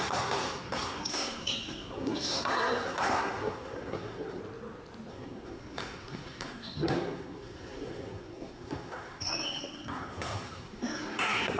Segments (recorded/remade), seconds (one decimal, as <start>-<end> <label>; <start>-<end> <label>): 0.0-4.4 remade; 4.4-5.1 recorded; 5.1-11.6 remade